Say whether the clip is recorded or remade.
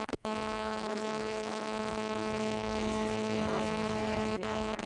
remade